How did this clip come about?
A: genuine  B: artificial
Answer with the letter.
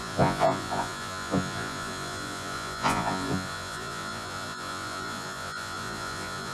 B